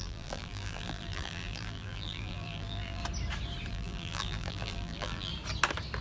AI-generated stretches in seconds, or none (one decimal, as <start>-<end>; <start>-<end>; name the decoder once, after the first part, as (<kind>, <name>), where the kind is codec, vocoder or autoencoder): 0.0-3.0 (vocoder, BigVGAN v2); 3.7-5.3